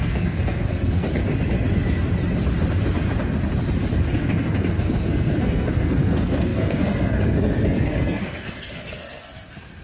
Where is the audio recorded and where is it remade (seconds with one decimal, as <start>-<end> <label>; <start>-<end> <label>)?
0.0-1.2 remade; 1.2-4.1 recorded; 4.1-9.8 remade